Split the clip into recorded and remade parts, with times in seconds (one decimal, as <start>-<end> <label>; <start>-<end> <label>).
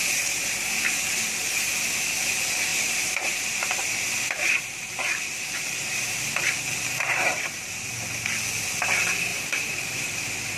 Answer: 0.0-0.7 remade; 0.7-2.7 recorded; 2.7-7.9 remade; 7.9-9.3 recorded; 9.3-10.2 remade; 10.2-10.6 recorded